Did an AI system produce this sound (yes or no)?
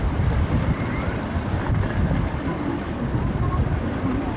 yes